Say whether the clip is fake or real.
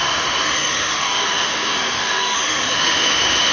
fake